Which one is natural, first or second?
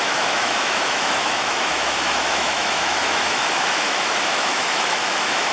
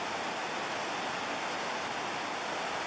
second